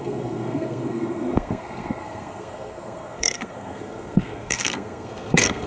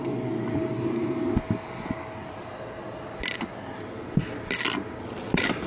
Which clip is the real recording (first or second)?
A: second